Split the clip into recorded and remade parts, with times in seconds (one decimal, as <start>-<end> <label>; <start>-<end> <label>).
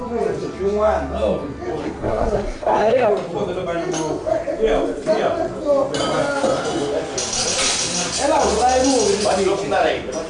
0.0-1.8 recorded; 1.8-3.1 remade; 3.1-10.3 recorded